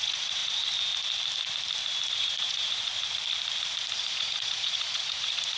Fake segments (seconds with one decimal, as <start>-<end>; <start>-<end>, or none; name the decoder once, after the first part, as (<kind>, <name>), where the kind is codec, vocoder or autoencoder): 0.0-0.4 (vocoder, Vocos); 2.1-2.9; 4.1-5.6